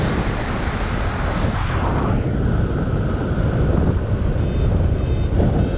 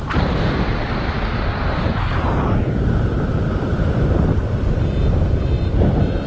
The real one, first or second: first